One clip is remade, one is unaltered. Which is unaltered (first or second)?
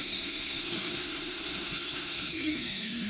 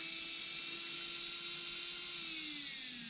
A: second